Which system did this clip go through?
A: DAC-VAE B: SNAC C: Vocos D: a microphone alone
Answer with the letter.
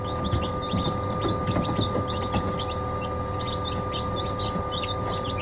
D